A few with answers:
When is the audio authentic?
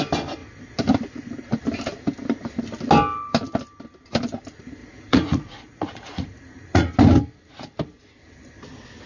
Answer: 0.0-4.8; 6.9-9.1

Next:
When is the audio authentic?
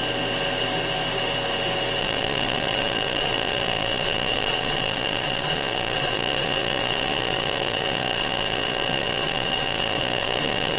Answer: 0.0-2.0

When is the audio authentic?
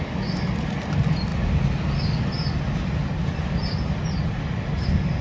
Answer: 0.0-5.2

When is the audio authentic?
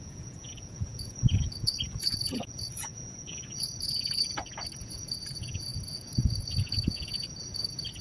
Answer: none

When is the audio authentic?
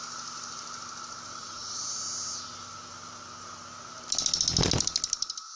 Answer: 0.0-1.4; 2.0-5.6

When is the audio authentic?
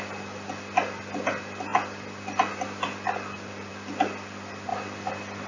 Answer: 0.0-5.5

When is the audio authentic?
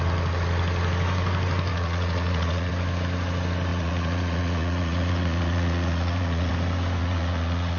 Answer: 0.0-1.7; 2.7-3.7; 6.5-7.0